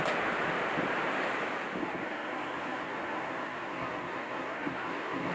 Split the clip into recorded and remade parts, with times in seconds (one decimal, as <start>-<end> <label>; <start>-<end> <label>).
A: 0.0-1.8 recorded; 1.8-5.3 remade